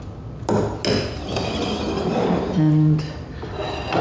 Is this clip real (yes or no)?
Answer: yes